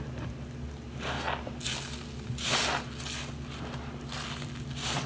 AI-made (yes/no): no